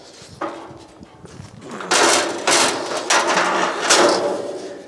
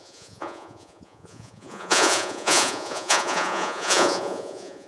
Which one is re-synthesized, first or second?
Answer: second